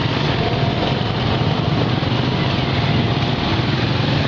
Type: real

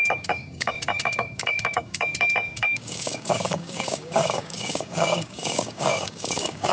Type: fake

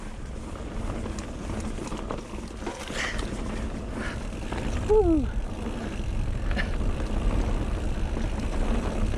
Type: real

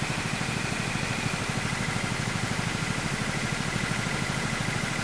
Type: real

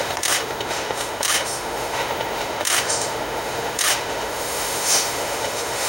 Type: fake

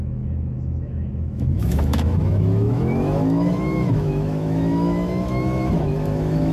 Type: fake